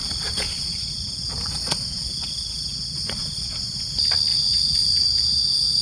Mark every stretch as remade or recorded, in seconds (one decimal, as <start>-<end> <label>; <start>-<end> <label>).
0.0-3.5 remade; 3.5-4.3 recorded; 4.3-5.8 remade